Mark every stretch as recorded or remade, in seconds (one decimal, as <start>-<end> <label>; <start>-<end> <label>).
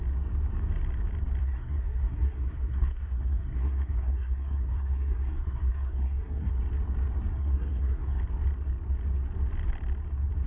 0.0-1.4 recorded; 1.4-6.5 remade; 6.5-7.3 recorded; 7.3-8.2 remade; 8.2-10.5 recorded